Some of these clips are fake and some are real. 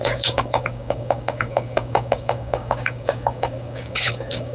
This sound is fake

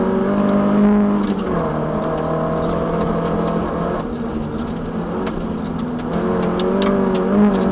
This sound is real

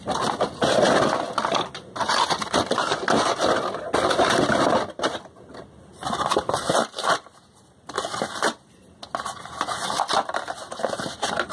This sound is real